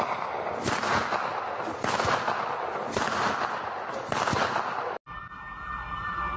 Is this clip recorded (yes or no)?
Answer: yes